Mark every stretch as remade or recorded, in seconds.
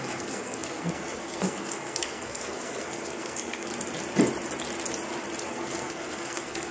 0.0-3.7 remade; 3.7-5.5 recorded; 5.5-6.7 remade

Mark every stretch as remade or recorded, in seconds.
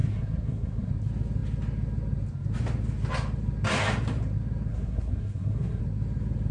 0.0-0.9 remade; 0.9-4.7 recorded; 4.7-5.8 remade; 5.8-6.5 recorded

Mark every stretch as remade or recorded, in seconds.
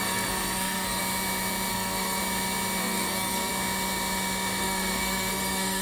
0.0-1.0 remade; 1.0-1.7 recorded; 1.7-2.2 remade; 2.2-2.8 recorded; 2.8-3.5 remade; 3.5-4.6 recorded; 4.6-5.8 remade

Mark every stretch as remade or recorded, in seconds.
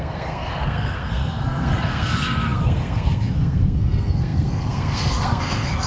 0.0-5.9 remade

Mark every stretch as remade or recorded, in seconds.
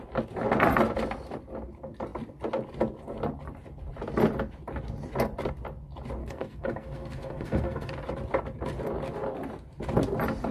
0.0-6.2 recorded; 6.2-7.9 remade; 7.9-10.5 recorded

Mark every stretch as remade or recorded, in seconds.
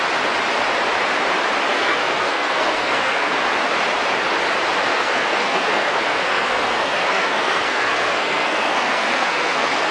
0.0-1.7 recorded; 1.7-3.3 remade; 3.3-4.9 recorded; 4.9-9.9 remade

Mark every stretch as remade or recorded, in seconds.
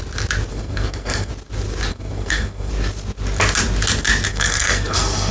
0.0-0.5 recorded; 0.5-1.3 remade; 1.3-1.9 recorded; 1.9-2.7 remade; 2.7-4.3 recorded; 4.3-5.3 remade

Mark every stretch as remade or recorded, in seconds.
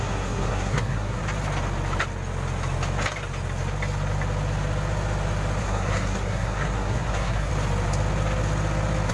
0.0-1.2 remade; 1.2-5.6 recorded; 5.6-7.5 remade; 7.5-9.1 recorded